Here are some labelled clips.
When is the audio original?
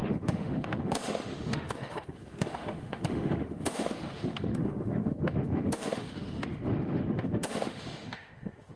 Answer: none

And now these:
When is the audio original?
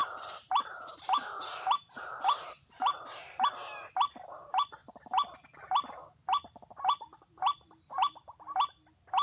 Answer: 3.5-9.2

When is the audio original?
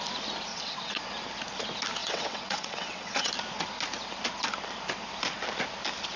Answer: 0.0-0.5; 1.0-2.0; 3.3-6.2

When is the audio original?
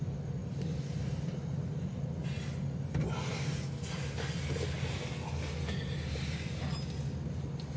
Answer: 0.0-7.8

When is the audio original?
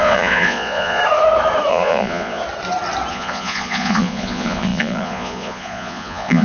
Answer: 1.0-1.7; 2.4-3.1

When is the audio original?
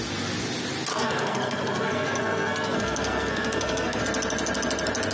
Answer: 0.0-0.9; 4.0-5.1